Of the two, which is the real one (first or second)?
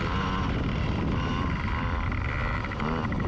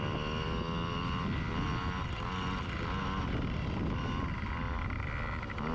second